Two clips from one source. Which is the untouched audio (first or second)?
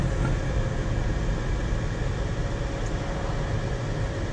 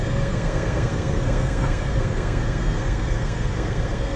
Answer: first